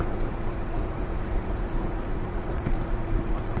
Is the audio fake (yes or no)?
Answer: yes